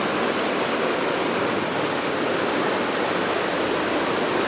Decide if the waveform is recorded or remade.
recorded